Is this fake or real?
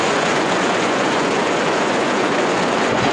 fake